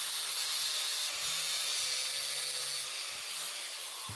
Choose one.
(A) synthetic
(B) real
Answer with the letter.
B